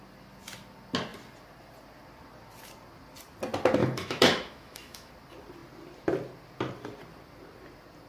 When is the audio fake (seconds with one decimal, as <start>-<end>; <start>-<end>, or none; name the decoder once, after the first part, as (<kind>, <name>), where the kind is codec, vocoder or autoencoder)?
3.8-5.1 (autoencoder, DAC-VAE)